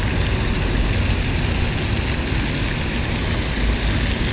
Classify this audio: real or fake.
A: real